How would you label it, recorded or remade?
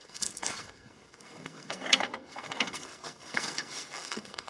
remade